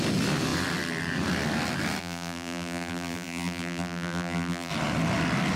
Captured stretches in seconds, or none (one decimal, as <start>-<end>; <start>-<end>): 0.0-2.0; 4.7-5.6